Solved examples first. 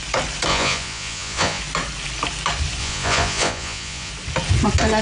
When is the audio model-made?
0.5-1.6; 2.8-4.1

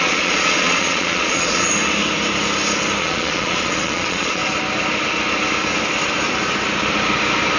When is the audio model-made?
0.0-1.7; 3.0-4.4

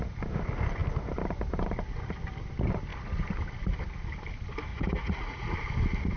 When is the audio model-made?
4.7-5.5

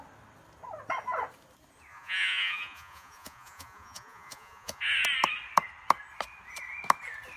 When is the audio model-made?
1.9-4.8

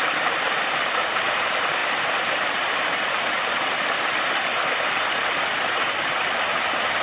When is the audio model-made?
none

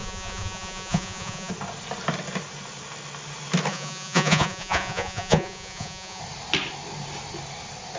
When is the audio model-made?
0.0-1.5; 3.7-6.2

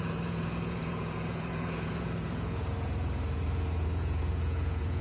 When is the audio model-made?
0.0-5.0

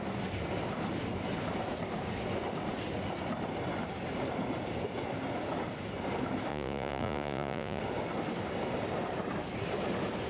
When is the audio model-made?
6.5-7.8